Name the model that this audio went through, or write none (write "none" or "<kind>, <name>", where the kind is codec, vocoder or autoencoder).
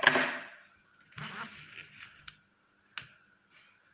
none